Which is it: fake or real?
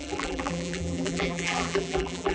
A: fake